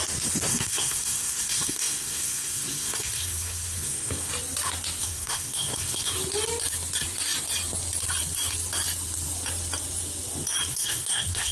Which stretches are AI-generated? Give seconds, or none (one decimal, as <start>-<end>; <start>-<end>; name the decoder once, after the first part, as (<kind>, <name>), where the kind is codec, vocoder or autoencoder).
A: 0.5-4.3 (codec, SNAC); 5.0-6.1; 10.7-11.5